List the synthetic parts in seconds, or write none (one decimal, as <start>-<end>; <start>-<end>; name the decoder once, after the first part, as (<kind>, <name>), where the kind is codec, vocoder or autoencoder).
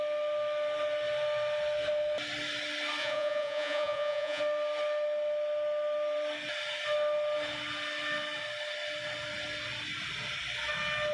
3.0-4.4 (vocoder, Vocos)